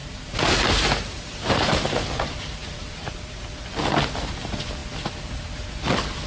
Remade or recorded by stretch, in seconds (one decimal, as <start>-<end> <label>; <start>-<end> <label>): 0.0-1.8 remade; 1.8-2.6 recorded; 2.6-3.4 remade; 3.4-6.3 recorded

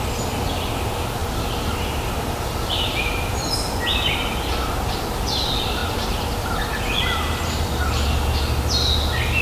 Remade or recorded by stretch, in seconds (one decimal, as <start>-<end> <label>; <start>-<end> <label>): 0.0-1.2 recorded; 1.2-3.4 remade; 3.4-9.4 recorded

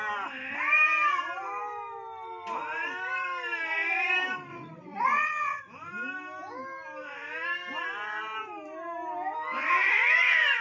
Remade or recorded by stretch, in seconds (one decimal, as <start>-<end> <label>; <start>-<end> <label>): 0.0-4.5 recorded; 4.5-5.6 remade; 5.6-10.6 recorded